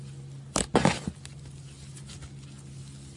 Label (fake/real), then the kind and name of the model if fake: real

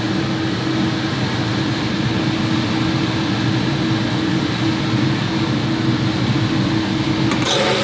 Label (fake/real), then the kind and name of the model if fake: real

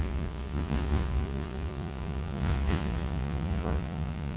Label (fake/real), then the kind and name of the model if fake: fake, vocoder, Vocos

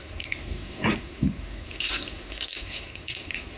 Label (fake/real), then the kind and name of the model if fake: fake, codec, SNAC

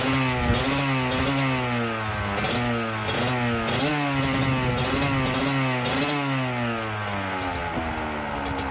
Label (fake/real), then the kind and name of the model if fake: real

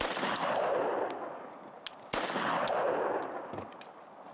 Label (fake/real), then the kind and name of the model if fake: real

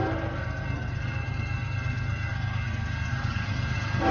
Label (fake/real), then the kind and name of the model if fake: fake, codec, SNAC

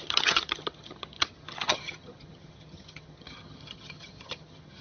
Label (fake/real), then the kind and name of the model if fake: fake, vocoder, HiFi-GAN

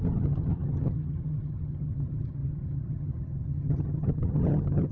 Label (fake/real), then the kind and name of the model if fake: fake, vocoder, HiFi-GAN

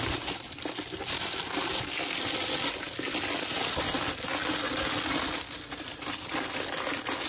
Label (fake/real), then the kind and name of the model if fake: real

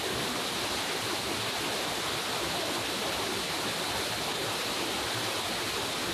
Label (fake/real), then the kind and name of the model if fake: real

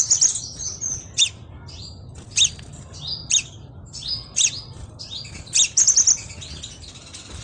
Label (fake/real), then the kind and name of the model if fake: real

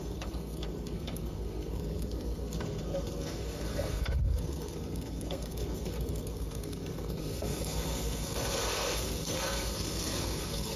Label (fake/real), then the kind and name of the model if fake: fake, codec, SNAC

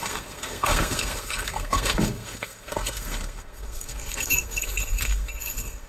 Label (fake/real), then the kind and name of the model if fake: fake, codec, SNAC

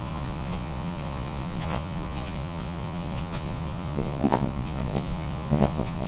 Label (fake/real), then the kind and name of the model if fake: fake, vocoder, Vocos